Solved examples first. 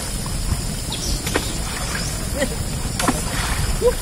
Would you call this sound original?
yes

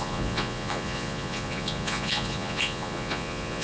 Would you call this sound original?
no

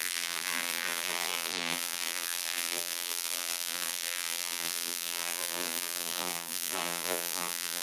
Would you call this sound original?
no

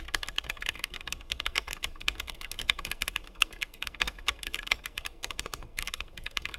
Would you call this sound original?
no